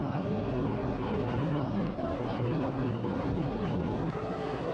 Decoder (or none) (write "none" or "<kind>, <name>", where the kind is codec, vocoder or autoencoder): codec, SNAC